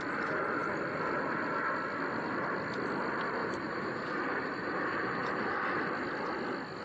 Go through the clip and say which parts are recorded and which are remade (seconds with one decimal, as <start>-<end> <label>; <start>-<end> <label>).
0.0-3.4 recorded; 3.4-5.5 remade; 5.5-6.8 recorded